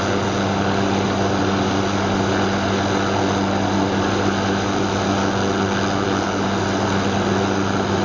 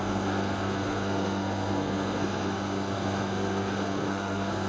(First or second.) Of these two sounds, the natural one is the first